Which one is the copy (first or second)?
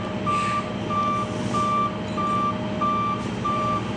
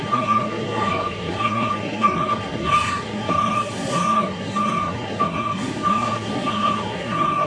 second